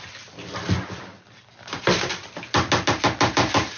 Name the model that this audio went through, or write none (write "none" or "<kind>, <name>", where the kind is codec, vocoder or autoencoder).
none